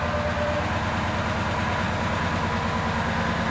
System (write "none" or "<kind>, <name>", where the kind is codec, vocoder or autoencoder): none